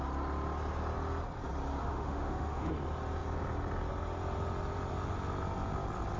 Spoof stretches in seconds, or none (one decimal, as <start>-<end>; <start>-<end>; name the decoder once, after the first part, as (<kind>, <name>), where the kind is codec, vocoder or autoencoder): 1.8-2.7 (autoencoder, DAC-VAE)